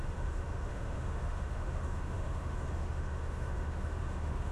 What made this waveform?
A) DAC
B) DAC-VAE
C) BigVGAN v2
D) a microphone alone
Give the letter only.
B